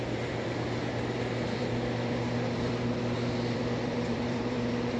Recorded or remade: remade